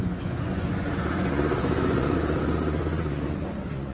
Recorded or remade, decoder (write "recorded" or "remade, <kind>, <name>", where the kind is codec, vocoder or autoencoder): remade, vocoder, Vocos